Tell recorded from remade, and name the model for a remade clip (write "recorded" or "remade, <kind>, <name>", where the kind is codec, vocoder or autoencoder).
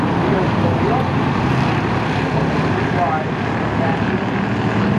recorded